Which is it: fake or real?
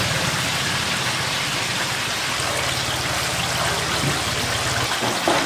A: real